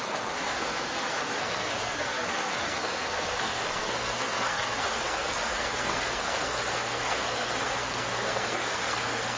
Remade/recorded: remade